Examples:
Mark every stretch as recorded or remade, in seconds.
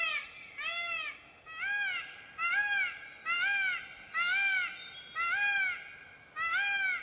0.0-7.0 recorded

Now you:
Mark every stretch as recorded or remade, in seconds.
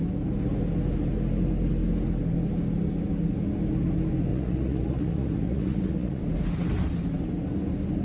0.0-4.3 recorded; 4.3-6.2 remade; 6.2-8.0 recorded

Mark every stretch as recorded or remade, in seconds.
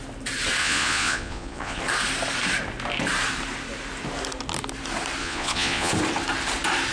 0.0-0.6 recorded; 0.6-1.8 remade; 1.8-5.2 recorded; 5.2-5.9 remade; 5.9-6.9 recorded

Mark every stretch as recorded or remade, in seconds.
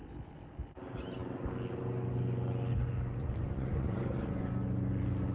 0.0-3.2 recorded; 3.2-4.5 remade; 4.5-5.3 recorded